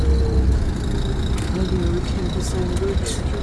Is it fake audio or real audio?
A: real